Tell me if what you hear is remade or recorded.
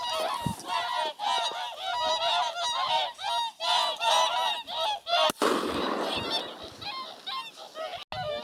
recorded